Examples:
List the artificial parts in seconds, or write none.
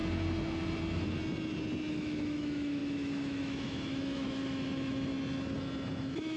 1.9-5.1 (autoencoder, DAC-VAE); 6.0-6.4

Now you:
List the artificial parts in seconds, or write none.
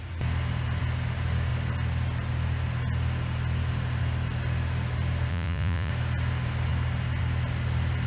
5.3-5.9 (vocoder, Vocos)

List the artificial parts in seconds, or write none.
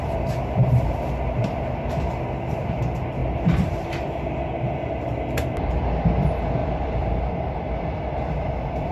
3.2-3.9 (vocoder, BigVGAN v2); 6.6-7.3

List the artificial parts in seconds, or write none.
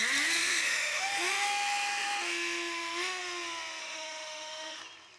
0.4-3.2 (autoencoder, DAC-VAE); 3.8-4.8